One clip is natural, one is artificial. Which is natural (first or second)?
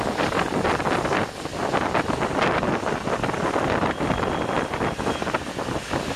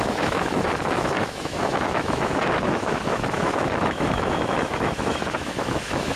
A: first